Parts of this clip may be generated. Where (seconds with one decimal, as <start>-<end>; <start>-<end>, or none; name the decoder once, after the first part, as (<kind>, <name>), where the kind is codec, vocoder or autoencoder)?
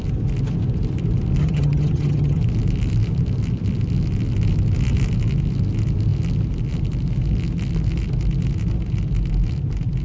1.4-2.4 (vocoder, HiFi-GAN)